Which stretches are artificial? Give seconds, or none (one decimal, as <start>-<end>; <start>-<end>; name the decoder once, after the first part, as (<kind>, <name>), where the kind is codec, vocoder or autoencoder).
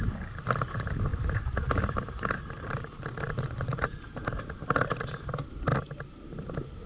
0.0-5.7 (vocoder, BigVGAN v2); 6.5-6.9